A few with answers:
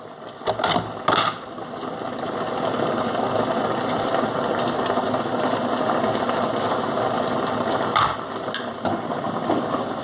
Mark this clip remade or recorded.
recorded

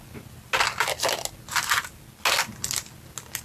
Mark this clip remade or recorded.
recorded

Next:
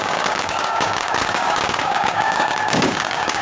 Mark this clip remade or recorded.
remade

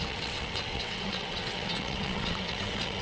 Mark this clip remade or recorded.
remade